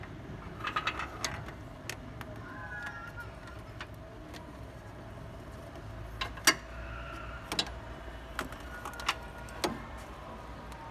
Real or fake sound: real